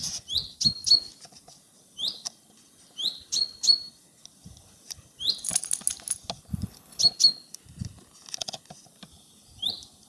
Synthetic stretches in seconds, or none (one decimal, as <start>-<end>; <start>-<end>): 6.5-7.0